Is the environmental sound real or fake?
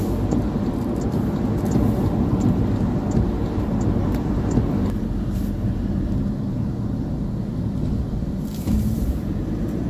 real